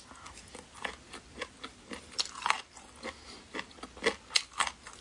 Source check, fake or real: real